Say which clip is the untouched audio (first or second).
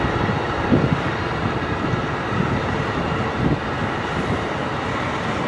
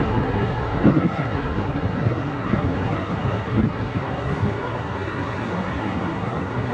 first